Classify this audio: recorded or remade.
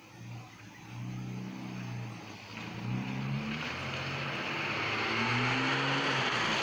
recorded